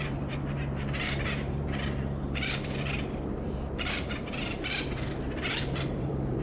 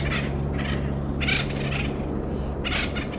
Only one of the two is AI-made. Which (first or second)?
first